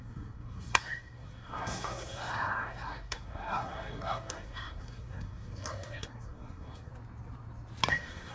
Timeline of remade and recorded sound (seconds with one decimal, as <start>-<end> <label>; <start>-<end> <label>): 0.0-6.9 remade; 6.9-7.9 recorded; 7.9-8.3 remade